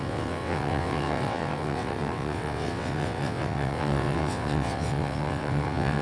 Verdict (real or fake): fake